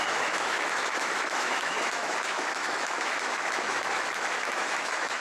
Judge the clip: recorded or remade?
remade